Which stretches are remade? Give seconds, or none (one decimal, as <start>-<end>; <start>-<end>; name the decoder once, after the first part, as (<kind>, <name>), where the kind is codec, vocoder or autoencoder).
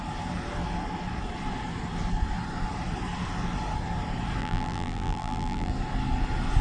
4.4-5.7 (vocoder, BigVGAN v2)